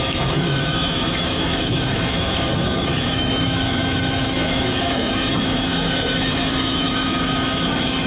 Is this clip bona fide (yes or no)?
no